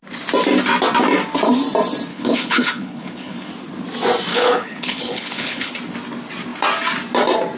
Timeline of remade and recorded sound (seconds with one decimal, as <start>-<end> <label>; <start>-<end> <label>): 0.0-2.1 recorded; 2.1-3.5 remade; 3.5-4.3 recorded; 4.3-5.7 remade; 5.7-7.6 recorded